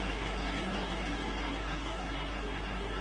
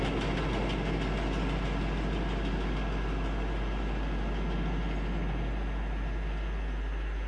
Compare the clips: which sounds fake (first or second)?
first